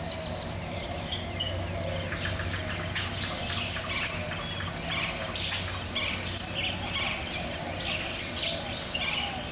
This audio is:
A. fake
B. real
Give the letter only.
B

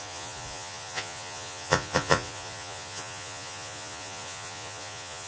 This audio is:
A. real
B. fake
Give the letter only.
B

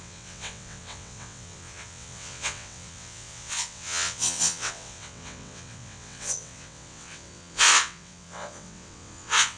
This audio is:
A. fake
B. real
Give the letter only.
A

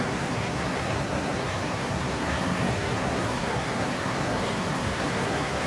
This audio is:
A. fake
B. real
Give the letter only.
A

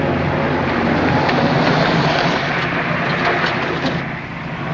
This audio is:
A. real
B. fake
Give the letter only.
A